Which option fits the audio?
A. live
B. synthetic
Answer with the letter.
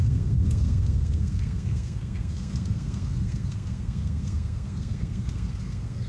B